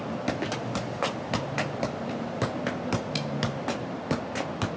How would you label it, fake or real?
real